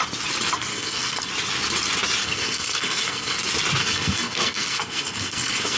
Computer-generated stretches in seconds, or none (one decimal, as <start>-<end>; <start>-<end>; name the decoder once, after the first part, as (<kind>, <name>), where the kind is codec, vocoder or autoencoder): 0.7-1.3 (codec, SNAC); 2.2-3.4; 3.8-5.8